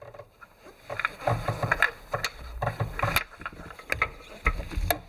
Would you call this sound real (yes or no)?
yes